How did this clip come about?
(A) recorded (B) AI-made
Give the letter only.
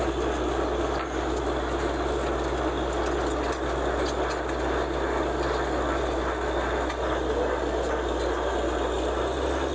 A